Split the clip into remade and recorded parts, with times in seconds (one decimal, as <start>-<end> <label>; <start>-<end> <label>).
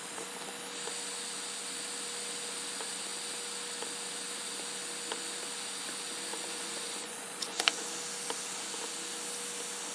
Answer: 0.0-6.3 recorded; 6.3-7.8 remade; 7.8-9.9 recorded